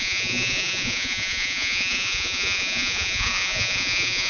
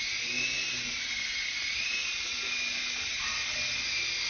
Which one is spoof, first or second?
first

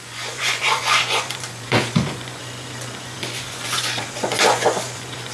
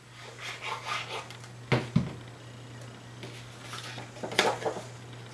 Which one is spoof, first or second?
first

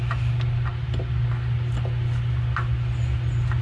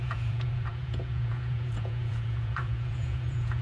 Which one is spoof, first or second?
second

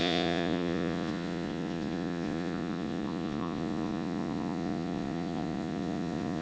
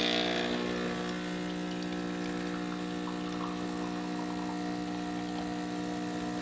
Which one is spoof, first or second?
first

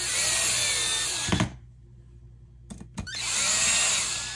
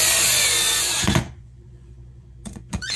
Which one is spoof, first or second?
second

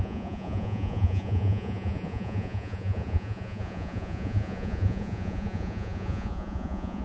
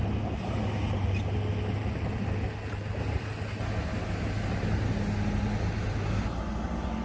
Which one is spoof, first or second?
first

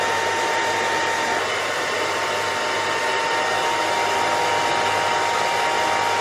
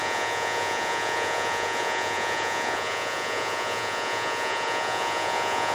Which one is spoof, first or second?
second